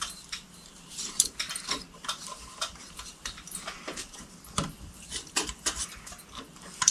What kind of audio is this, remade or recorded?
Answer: remade